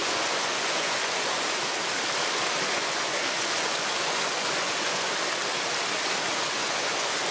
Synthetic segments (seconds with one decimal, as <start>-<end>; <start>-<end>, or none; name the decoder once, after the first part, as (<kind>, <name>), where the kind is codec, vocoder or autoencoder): 0.0-1.6 (vocoder, Vocos); 2.7-5.1; 6.3-7.3